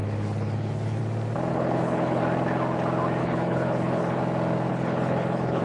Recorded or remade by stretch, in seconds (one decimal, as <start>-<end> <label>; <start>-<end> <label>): 0.0-1.0 remade; 1.0-1.5 recorded; 1.5-2.2 remade; 2.2-3.2 recorded; 3.2-4.2 remade; 4.2-4.7 recorded; 4.7-5.6 remade